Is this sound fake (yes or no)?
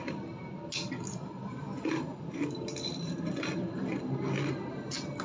no